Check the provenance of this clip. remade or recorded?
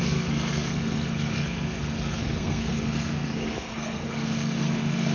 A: remade